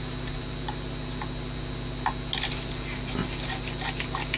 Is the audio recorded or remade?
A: recorded